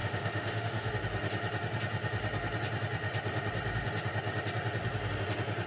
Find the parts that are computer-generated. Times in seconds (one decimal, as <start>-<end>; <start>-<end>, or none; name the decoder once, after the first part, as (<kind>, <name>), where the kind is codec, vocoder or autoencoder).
0.0-0.9 (autoencoder, DAC-VAE)